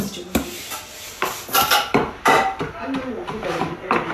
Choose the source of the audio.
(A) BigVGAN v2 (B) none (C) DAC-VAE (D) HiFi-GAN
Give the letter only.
B